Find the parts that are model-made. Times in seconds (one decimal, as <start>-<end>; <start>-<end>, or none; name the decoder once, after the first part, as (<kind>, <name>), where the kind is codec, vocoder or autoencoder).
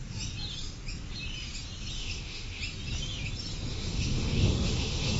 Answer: 2.0-2.6 (autoencoder, DAC-VAE); 3.7-5.2